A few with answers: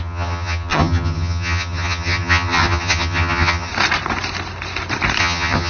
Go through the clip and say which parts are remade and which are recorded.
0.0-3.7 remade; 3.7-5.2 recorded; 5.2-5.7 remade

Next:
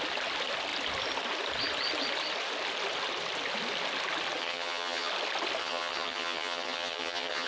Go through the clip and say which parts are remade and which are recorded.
0.0-4.4 recorded; 4.4-5.1 remade; 5.1-5.6 recorded; 5.6-7.5 remade

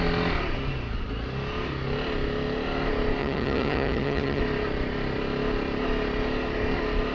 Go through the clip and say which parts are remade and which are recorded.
0.0-3.2 recorded; 3.2-4.4 remade; 4.4-7.1 recorded

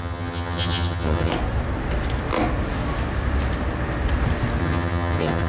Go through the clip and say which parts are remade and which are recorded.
0.0-1.3 remade; 1.3-4.6 recorded; 4.6-5.5 remade

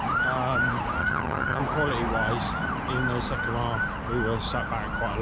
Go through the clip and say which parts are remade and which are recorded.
0.0-1.0 recorded; 1.0-1.6 remade; 1.6-5.2 recorded

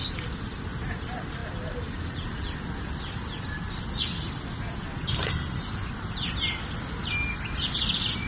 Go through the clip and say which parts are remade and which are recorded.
0.0-8.3 recorded

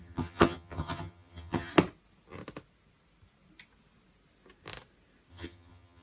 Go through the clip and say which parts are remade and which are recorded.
0.0-1.7 remade; 1.7-5.3 recorded; 5.3-6.0 remade